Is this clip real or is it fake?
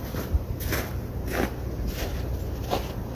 real